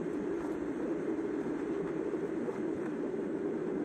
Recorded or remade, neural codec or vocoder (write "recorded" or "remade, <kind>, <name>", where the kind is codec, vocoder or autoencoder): recorded